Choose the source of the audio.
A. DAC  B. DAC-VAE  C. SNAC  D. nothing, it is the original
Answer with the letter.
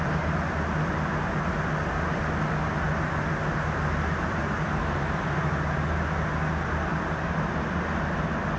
D